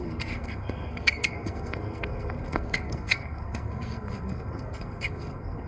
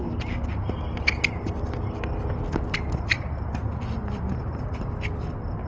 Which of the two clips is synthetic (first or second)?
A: first